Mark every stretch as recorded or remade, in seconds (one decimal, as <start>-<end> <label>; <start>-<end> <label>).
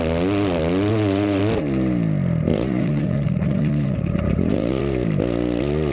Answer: 0.0-0.9 recorded; 0.9-1.4 remade; 1.4-2.5 recorded; 2.5-4.8 remade; 4.8-5.9 recorded